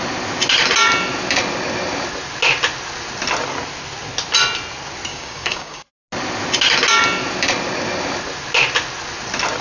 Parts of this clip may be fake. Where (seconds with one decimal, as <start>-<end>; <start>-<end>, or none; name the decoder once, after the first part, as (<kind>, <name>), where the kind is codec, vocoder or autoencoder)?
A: 5.1-5.9 (codec, DAC)